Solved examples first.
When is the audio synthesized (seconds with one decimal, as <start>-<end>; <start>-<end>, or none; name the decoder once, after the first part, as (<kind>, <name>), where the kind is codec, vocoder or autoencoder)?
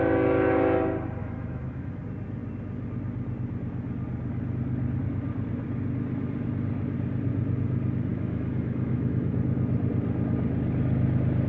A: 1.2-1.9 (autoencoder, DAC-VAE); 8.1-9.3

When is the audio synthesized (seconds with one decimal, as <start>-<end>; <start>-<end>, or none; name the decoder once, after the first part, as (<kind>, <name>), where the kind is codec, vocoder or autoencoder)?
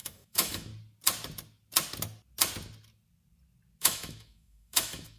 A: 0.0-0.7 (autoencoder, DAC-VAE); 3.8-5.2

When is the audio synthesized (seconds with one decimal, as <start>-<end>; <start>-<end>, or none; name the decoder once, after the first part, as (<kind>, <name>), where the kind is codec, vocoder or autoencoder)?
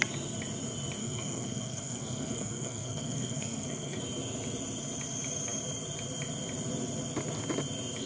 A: 1.0-4.0 (codec, SNAC)